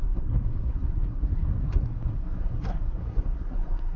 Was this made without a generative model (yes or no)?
no